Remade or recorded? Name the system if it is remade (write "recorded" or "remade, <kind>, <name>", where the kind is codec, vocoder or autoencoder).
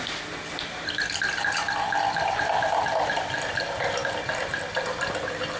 recorded